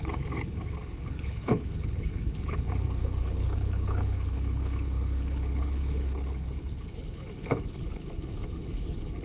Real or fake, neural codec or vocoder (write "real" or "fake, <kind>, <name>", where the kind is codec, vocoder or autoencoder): fake, codec, HILCodec